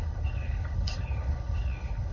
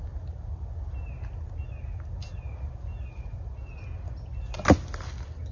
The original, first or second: second